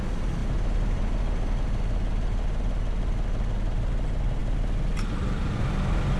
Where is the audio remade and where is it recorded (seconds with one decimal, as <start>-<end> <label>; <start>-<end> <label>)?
0.0-6.2 recorded